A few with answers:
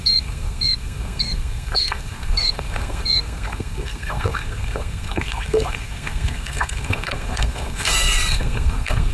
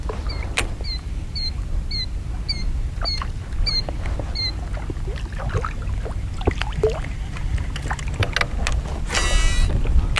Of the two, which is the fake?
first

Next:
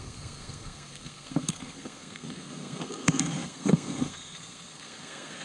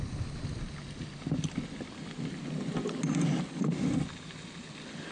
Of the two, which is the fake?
first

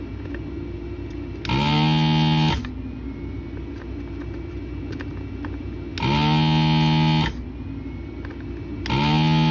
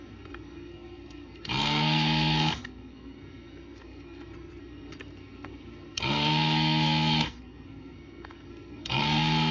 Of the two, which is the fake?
second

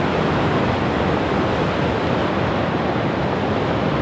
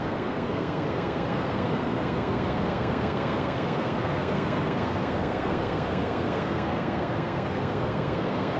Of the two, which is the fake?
second